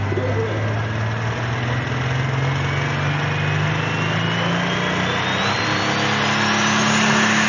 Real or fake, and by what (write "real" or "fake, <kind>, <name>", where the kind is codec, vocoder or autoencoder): real